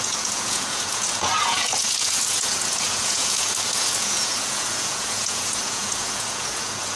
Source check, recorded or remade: remade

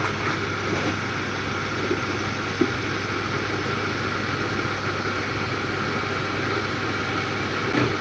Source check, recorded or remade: recorded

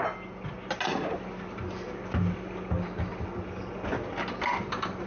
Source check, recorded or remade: recorded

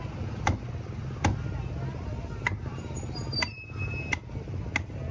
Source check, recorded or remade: recorded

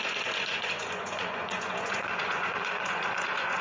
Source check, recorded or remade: remade